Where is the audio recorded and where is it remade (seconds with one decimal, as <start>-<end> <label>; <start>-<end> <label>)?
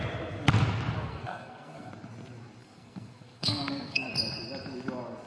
0.0-1.1 recorded; 1.1-1.9 remade; 1.9-2.6 recorded; 2.6-4.1 remade; 4.1-5.3 recorded